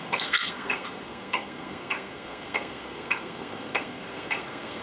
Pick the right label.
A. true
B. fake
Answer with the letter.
B